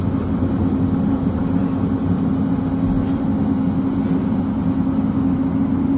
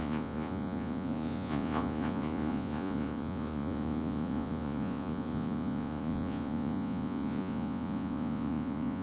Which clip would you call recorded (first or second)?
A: first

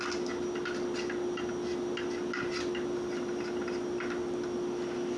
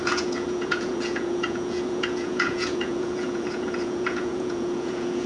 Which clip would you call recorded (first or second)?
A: first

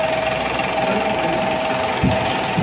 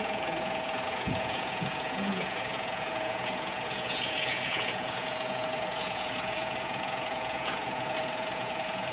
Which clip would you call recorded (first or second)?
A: first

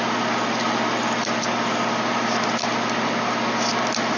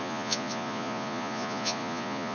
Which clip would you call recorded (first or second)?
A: first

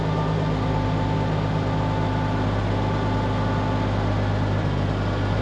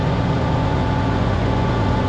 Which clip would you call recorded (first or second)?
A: first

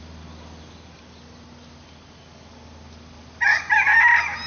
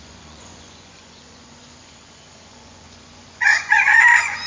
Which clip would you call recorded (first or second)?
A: first